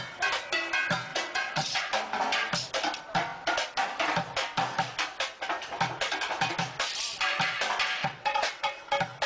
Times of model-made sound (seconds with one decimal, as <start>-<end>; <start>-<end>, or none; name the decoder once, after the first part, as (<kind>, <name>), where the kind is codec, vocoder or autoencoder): 1.1-1.8 (vocoder, WaveNeXt); 8.0-8.8